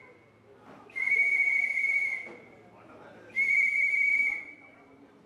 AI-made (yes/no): no